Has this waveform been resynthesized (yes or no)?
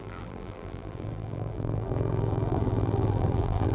yes